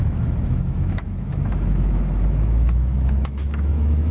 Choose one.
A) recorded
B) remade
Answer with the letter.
B